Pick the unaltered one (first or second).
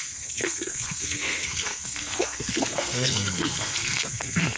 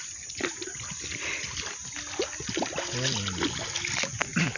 second